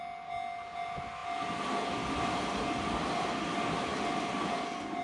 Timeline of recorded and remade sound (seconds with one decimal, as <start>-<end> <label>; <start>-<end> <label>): 0.0-5.0 recorded